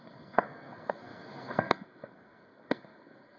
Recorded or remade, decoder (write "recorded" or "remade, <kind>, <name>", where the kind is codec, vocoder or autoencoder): remade, codec, SNAC